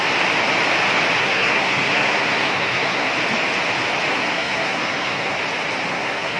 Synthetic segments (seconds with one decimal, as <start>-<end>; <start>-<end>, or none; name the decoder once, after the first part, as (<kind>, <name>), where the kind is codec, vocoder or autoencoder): 1.2-3.1 (codec, SNAC); 4.1-5.4; 5.9-6.4